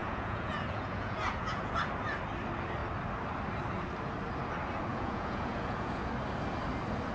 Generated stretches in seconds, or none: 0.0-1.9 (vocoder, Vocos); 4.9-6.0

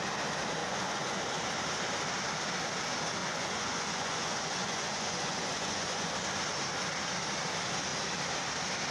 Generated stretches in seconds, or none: 0.6-1.2 (vocoder, Vocos); 3.2-6.1